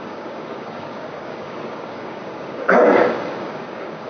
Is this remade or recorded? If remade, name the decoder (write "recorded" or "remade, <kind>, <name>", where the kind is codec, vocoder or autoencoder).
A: remade, codec, DAC